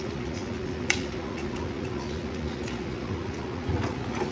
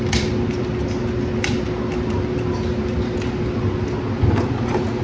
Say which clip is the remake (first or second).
first